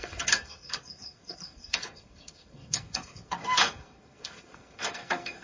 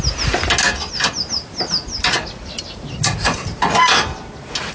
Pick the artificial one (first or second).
first